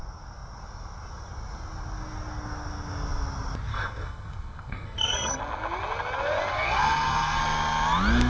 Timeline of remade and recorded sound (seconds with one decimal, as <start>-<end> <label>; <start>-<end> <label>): 0.0-3.7 recorded; 3.7-5.4 remade; 5.4-6.5 recorded; 6.5-7.4 remade; 7.4-8.3 recorded